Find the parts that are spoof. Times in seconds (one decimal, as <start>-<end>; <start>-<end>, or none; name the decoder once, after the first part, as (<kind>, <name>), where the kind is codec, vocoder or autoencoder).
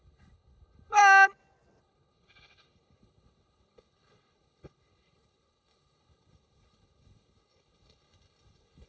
0.0-1.0 (codec, HILCodec); 1.8-8.9